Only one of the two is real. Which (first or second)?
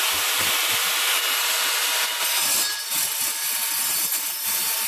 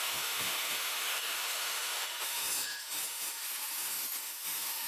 first